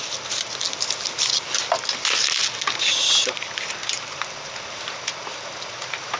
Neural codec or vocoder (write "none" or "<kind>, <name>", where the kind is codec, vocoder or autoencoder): none